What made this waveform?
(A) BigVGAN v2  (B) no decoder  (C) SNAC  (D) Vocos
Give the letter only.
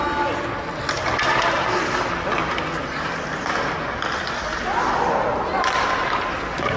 B